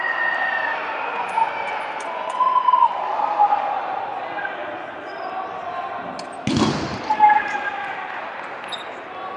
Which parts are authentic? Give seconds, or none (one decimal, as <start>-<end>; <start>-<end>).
0.0-1.1; 2.8-9.4